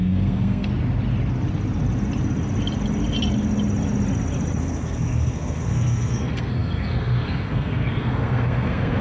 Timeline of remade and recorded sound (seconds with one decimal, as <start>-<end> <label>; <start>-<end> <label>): 0.0-0.7 remade; 0.7-4.6 recorded; 4.6-9.0 remade